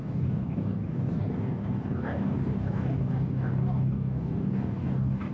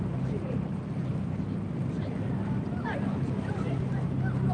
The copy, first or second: first